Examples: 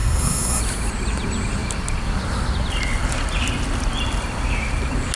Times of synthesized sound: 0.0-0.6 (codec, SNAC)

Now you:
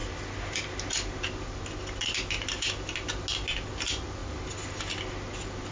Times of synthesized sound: none

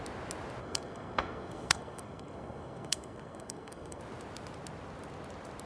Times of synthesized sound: 0.6-4.0 (codec, SNAC)

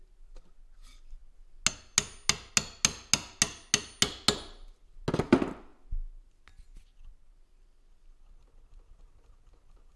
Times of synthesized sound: none

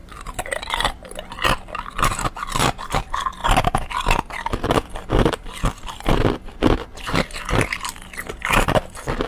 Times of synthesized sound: none

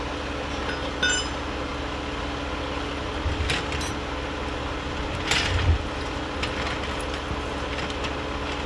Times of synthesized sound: none